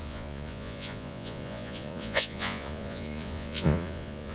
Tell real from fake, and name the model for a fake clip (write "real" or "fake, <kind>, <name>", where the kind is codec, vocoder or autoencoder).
fake, vocoder, Vocos